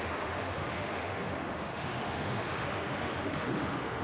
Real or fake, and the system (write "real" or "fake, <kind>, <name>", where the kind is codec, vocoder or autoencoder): fake, autoencoder, DAC-VAE